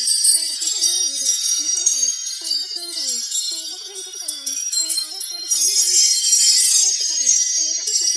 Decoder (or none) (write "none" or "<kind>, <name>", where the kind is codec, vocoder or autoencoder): codec, SNAC